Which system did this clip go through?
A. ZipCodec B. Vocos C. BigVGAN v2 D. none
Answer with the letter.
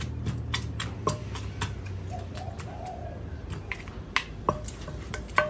D